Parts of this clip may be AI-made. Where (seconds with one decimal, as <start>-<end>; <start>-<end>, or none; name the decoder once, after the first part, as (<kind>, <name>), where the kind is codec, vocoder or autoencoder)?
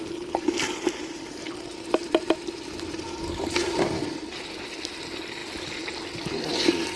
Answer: none